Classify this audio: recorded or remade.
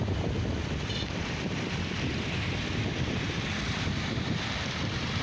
recorded